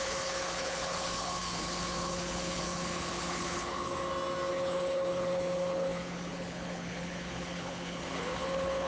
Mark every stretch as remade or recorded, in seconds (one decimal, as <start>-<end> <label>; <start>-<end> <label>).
0.0-4.0 remade; 4.0-4.5 recorded; 4.5-8.9 remade